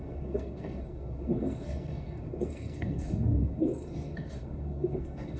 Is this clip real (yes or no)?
no